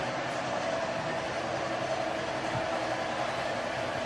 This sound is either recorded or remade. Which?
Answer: recorded